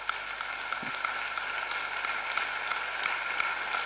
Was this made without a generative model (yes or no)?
yes